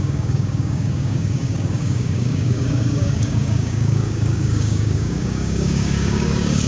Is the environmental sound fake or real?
fake